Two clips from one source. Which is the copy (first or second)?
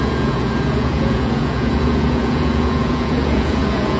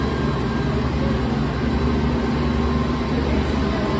first